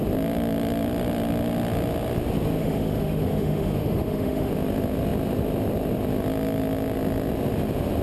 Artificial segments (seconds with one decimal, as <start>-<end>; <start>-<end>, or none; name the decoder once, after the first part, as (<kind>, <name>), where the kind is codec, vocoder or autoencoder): 2.6-4.5 (autoencoder, DAC-VAE)